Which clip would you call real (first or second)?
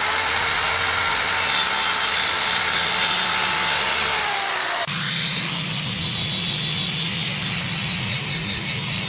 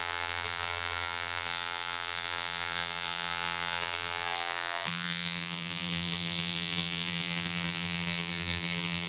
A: first